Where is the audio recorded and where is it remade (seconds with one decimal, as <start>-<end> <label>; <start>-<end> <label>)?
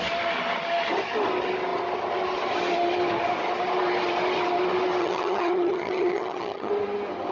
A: 0.0-5.0 recorded; 5.0-6.7 remade; 6.7-7.3 recorded